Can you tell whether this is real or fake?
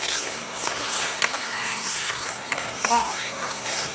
fake